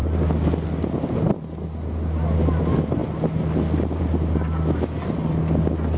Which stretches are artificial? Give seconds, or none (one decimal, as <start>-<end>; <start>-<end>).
none